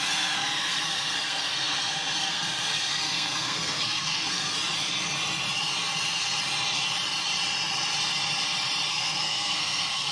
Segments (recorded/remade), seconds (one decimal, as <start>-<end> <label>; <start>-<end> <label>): 0.0-4.5 remade; 4.5-8.9 recorded; 8.9-10.1 remade